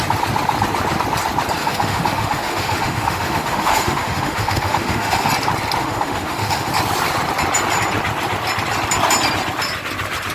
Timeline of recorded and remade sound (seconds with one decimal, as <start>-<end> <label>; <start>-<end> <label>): 0.0-1.6 recorded; 1.6-5.3 remade; 5.3-5.8 recorded; 5.8-6.7 remade; 6.7-10.3 recorded